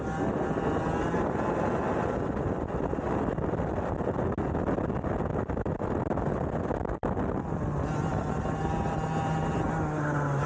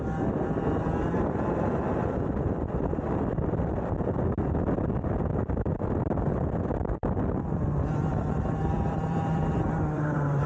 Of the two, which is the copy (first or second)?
second